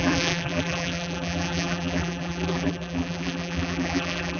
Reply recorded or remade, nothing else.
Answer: remade